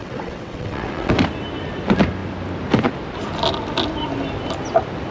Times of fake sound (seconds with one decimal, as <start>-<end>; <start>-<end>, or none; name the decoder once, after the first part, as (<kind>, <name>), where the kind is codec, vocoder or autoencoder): 0.0-1.1 (vocoder, WaveNeXt)